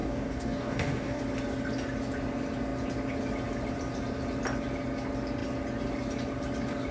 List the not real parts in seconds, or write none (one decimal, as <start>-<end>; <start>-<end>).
0.0-1.2